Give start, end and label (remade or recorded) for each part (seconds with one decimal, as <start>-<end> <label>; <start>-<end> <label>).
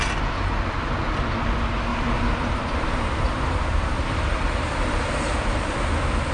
0.0-1.9 recorded; 1.9-5.7 remade; 5.7-6.3 recorded